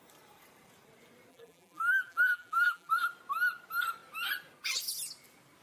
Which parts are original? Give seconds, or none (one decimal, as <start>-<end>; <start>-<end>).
0.0-1.3; 2.9-5.6